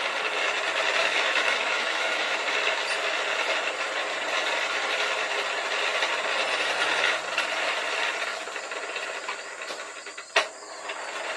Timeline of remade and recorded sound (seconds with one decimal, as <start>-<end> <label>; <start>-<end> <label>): 0.0-1.0 recorded; 1.0-2.3 remade; 2.3-11.4 recorded